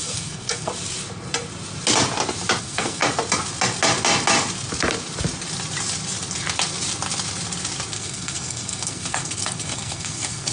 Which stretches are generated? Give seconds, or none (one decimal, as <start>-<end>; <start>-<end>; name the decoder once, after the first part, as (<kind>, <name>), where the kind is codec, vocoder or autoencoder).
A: 0.0-0.7 (codec, SNAC); 2.6-3.0; 7.9-10.5